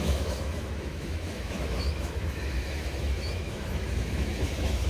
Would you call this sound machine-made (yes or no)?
yes